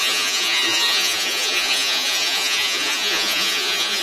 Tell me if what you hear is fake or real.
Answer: fake